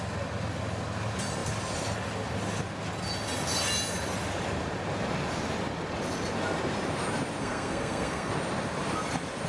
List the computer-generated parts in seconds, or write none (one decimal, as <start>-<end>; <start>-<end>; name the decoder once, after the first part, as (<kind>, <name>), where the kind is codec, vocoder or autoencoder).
7.4-8.3 (codec, SNAC)